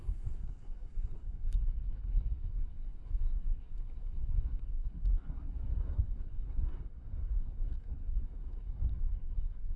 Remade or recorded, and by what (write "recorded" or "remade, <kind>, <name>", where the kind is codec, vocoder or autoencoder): remade, codec, SNAC